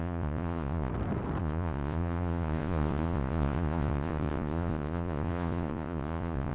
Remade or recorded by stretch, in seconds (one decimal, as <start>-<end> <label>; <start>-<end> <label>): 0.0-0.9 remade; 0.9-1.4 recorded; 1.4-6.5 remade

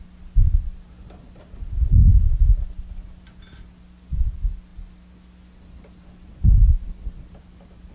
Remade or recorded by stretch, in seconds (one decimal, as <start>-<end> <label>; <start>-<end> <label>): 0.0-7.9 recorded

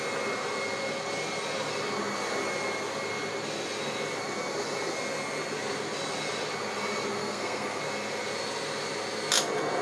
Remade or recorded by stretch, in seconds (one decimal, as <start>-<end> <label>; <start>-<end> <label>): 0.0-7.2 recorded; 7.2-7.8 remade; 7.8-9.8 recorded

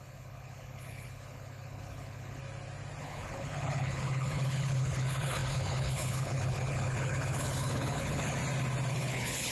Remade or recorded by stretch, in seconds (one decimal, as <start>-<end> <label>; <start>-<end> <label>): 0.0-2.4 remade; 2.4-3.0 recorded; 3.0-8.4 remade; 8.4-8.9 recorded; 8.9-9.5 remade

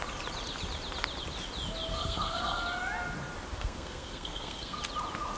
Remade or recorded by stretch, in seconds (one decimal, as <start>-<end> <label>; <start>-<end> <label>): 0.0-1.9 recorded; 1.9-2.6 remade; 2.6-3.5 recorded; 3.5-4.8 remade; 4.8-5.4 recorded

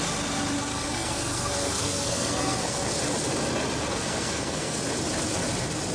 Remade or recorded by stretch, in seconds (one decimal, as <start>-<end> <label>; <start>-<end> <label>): 0.0-0.7 recorded; 0.7-2.9 remade; 2.9-3.9 recorded; 3.9-4.8 remade; 4.8-5.9 recorded

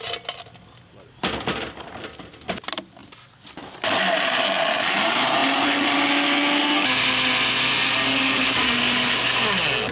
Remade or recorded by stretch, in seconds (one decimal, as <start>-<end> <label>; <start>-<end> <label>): 0.0-9.9 recorded

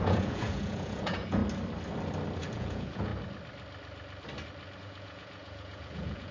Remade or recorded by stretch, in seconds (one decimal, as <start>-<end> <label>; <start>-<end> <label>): 0.0-1.4 remade; 1.4-2.4 recorded; 2.4-3.1 remade; 3.1-4.8 recorded; 4.8-6.3 remade